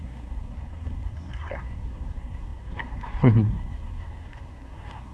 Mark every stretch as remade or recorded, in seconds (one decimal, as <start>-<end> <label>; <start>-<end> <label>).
0.0-5.1 remade